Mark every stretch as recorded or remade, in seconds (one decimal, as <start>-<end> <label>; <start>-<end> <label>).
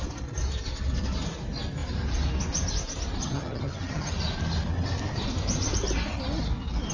0.0-3.2 recorded; 3.2-4.1 remade; 4.1-6.9 recorded